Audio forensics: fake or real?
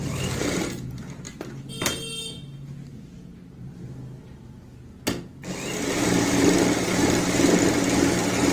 real